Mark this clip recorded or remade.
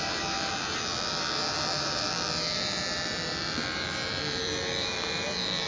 remade